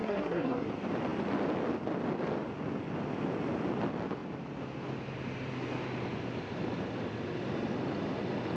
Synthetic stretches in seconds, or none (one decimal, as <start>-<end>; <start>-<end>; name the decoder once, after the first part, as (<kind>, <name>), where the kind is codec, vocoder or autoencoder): 0.0-0.7 (codec, SNAC)